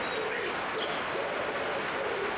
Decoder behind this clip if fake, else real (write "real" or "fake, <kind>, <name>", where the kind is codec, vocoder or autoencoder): real